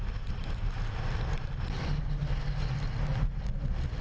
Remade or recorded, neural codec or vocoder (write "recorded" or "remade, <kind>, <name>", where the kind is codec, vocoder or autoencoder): recorded